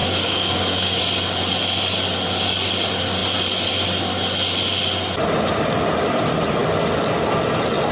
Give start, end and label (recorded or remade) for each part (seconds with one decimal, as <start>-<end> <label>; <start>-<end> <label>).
0.0-1.0 remade; 1.0-7.9 recorded